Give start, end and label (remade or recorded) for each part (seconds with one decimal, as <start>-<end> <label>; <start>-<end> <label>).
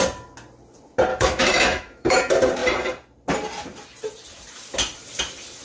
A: 0.0-1.1 recorded; 1.1-2.2 remade; 2.2-5.6 recorded